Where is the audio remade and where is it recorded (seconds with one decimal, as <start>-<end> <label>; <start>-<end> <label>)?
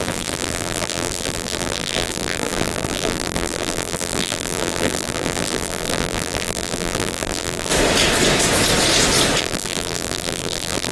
0.0-7.7 remade; 7.7-9.4 recorded; 9.4-10.9 remade